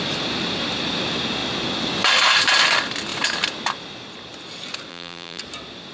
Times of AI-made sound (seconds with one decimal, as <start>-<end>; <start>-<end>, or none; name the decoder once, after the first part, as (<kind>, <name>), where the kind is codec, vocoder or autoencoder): 4.9-5.4 (vocoder, BigVGAN v2)